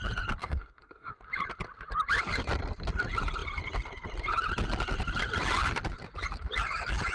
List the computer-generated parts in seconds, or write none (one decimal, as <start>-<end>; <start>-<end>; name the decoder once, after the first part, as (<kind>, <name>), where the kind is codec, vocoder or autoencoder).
0.4-1.1 (codec, SNAC)